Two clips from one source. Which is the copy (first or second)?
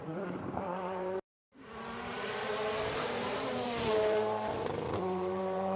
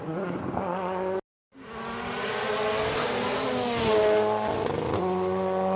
first